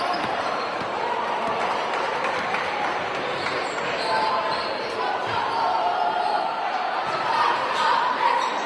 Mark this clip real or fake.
fake